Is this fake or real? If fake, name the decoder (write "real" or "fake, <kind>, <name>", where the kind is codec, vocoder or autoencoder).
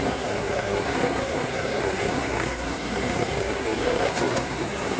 fake, codec, SNAC